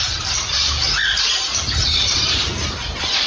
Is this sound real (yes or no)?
no